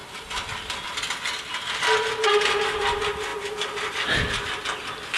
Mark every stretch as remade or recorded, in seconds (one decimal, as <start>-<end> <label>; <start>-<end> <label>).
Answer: 0.0-5.2 recorded